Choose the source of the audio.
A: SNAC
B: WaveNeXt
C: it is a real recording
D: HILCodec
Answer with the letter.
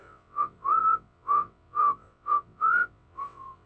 B